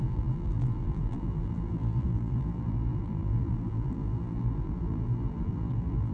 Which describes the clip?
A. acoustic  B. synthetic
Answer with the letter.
B